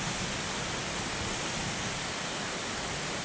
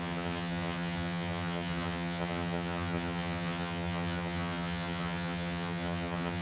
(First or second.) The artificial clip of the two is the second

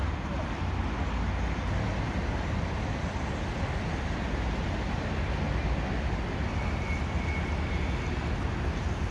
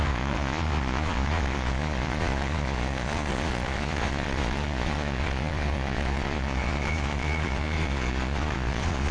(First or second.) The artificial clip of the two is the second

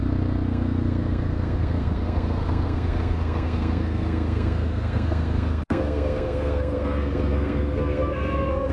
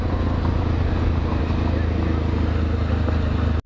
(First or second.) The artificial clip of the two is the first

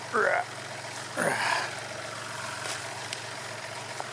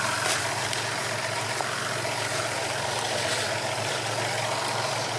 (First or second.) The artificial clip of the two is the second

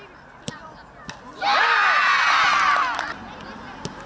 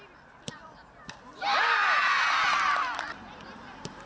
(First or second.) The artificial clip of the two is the second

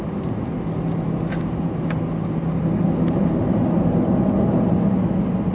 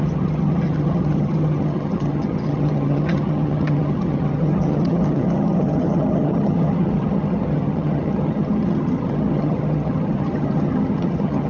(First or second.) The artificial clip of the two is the second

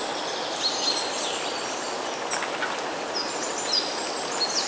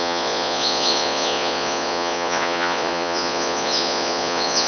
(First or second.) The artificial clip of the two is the second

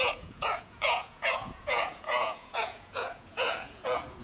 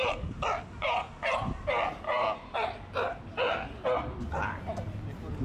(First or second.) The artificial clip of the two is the first